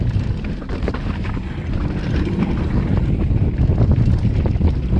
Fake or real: real